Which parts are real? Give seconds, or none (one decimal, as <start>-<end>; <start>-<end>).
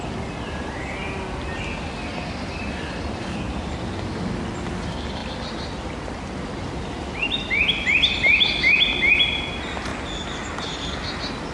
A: 0.0-11.5